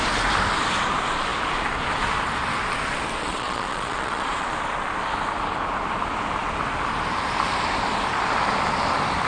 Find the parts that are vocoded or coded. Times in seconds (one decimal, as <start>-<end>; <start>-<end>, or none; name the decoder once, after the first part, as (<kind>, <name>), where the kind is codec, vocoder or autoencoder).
3.2-4.5 (vocoder, Vocos)